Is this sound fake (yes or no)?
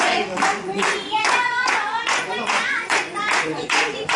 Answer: yes